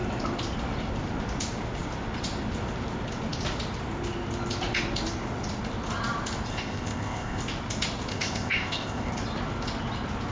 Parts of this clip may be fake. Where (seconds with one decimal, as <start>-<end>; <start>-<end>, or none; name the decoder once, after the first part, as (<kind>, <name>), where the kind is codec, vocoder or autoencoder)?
6.5-7.4 (codec, ZipCodec); 8.1-9.1